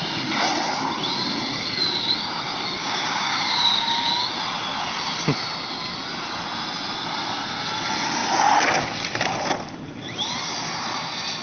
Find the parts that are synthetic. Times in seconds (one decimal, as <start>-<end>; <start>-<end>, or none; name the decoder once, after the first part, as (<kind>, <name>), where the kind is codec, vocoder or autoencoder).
2.8-4.1 (codec, DAC)